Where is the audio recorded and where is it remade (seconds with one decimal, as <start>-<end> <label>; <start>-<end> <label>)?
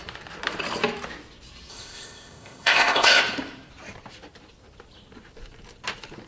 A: 0.0-1.7 recorded; 1.7-3.2 remade; 3.2-6.3 recorded